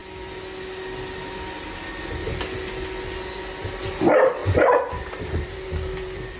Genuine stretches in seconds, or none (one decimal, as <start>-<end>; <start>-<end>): 0.0-3.8